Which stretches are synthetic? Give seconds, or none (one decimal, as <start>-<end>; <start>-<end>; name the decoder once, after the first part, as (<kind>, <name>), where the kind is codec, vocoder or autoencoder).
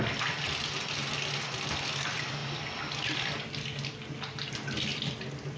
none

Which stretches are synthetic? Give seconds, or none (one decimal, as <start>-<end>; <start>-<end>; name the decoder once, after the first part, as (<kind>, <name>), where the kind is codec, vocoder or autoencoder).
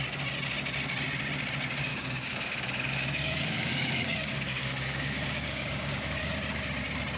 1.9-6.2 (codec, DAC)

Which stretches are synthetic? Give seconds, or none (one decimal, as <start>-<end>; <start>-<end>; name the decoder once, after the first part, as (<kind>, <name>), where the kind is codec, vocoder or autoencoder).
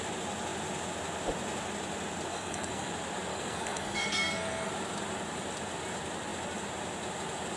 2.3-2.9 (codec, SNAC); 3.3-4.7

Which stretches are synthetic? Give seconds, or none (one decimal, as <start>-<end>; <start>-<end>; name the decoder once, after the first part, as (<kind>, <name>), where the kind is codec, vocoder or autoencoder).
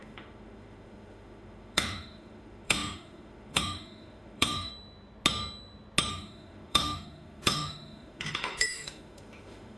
0.0-4.7 (autoencoder, DAC-VAE); 6.1-9.8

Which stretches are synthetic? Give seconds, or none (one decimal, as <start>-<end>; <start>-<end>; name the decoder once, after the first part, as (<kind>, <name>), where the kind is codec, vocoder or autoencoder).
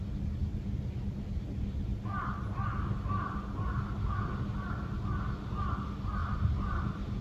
none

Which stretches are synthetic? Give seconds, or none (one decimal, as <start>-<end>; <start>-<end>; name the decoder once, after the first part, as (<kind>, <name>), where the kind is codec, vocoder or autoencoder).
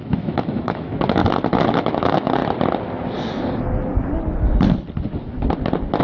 0.0-1.2 (autoencoder, DAC-VAE); 1.7-2.4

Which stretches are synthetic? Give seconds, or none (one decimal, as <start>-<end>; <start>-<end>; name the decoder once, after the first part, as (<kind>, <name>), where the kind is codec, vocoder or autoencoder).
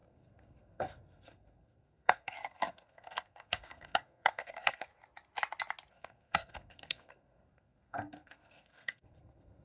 0.0-4.9 (codec, SNAC); 5.9-9.6